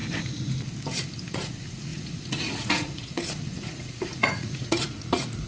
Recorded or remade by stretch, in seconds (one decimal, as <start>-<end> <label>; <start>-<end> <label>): 0.0-1.3 recorded; 1.3-5.5 remade